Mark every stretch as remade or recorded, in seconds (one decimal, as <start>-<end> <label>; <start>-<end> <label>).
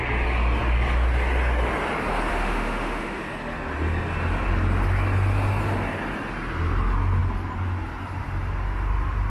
0.0-2.3 recorded; 2.3-3.2 remade; 3.2-9.3 recorded